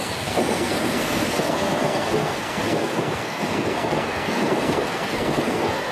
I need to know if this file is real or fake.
fake